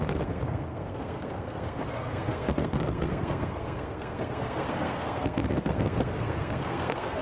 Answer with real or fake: fake